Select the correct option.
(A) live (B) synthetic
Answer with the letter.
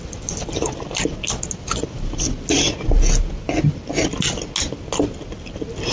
A